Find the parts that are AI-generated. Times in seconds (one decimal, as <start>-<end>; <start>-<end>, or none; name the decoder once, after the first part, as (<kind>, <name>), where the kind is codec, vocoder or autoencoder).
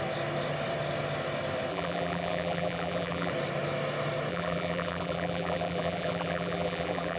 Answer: 1.7-3.3 (vocoder, BigVGAN v2); 4.3-7.2